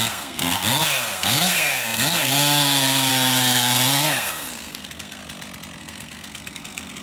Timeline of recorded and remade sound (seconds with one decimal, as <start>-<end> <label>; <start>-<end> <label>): 0.0-5.2 remade; 5.2-5.8 recorded; 5.8-7.0 remade